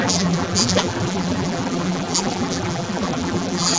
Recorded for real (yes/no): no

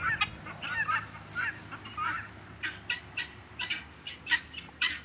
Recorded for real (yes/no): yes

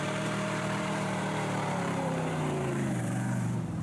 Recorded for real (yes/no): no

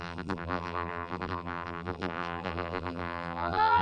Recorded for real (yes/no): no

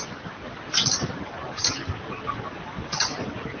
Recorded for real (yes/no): yes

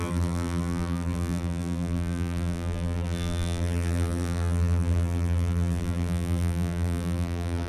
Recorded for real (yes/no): no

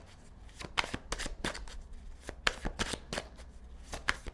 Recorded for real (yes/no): yes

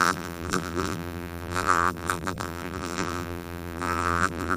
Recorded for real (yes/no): no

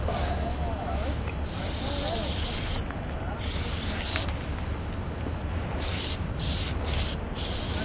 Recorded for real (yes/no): yes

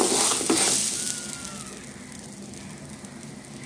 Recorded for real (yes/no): yes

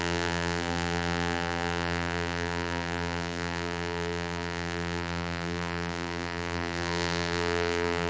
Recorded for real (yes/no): no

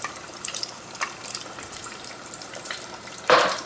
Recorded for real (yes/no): no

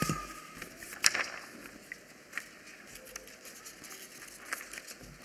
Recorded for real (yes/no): yes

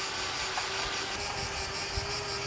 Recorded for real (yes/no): yes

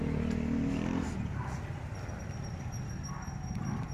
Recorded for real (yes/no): yes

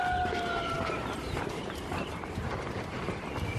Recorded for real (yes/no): yes